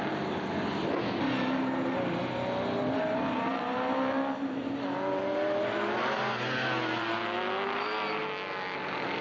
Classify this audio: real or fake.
real